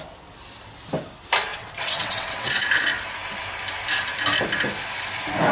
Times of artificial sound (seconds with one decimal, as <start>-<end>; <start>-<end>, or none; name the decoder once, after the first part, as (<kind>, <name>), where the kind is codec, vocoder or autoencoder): 1.5-2.6 (vocoder, WaveNeXt)